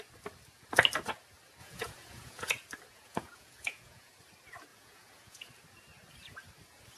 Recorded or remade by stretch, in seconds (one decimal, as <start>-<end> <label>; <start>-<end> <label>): 0.0-1.6 recorded; 1.6-2.5 remade; 2.5-2.9 recorded; 2.9-4.1 remade; 4.1-4.7 recorded; 4.7-5.5 remade; 5.5-7.0 recorded